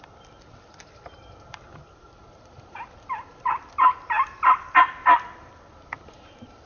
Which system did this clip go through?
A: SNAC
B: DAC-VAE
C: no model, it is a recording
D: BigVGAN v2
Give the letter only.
D